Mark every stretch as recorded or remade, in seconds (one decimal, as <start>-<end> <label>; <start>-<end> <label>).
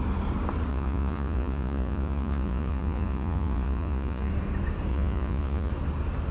0.0-0.7 recorded; 0.7-4.3 remade; 4.3-4.9 recorded; 4.9-5.7 remade; 5.7-6.3 recorded